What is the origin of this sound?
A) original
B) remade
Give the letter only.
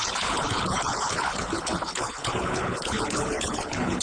B